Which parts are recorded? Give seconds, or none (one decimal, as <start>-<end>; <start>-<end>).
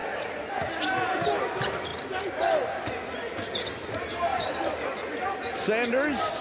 0.0-6.4